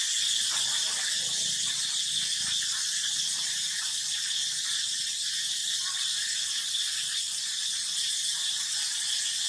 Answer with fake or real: real